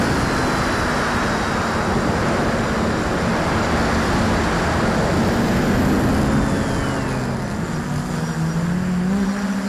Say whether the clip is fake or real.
real